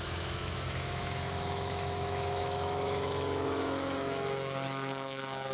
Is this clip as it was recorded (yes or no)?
no